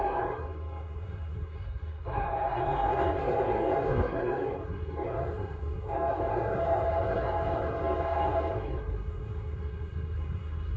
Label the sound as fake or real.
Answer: fake